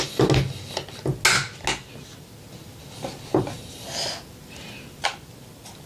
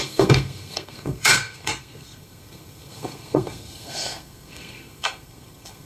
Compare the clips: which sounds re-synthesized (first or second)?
second